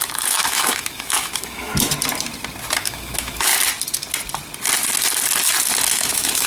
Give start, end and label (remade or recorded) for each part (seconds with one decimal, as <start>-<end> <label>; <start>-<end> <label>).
0.0-1.7 remade; 1.7-2.8 recorded; 2.8-3.5 remade; 3.5-5.9 recorded; 5.9-6.5 remade